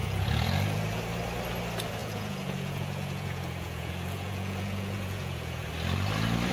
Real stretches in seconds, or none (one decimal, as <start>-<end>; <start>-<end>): 1.0-2.0; 5.7-6.5